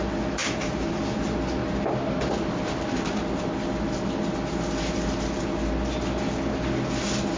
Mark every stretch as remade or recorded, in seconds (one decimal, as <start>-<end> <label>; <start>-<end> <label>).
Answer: 0.0-0.4 recorded; 0.4-1.0 remade; 1.0-7.4 recorded